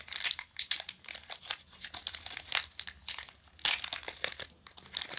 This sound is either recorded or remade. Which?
recorded